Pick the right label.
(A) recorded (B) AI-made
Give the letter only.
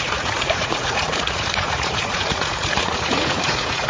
B